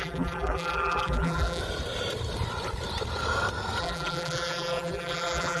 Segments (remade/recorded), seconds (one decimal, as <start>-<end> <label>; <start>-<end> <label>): 0.0-1.6 remade; 1.6-3.8 recorded; 3.8-5.6 remade